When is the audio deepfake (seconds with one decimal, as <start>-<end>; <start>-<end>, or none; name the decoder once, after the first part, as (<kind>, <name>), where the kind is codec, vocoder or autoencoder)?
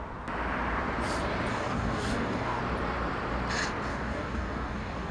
1.5-2.6 (codec, DAC); 3.9-5.1